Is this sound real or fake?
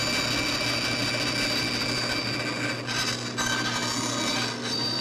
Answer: real